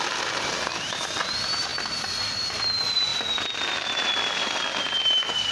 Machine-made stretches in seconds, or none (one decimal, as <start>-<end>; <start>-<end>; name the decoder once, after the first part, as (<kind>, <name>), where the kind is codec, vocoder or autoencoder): none